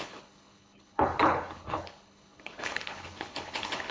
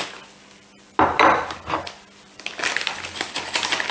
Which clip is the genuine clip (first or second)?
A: second